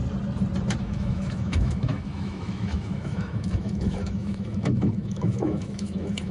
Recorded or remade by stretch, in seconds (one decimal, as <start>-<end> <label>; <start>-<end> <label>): 0.0-0.8 recorded; 0.8-6.3 remade